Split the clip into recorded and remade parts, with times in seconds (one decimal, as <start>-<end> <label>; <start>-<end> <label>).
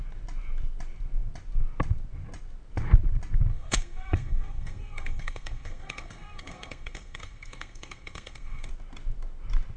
0.0-3.5 recorded; 3.5-8.7 remade; 8.7-9.8 recorded